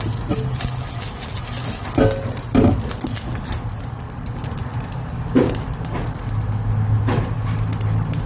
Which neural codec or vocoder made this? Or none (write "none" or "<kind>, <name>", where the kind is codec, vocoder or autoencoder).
none